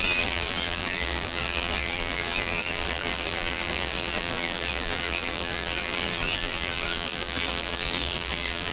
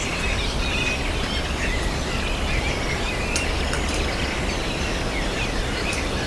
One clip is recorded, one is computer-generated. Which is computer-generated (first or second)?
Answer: first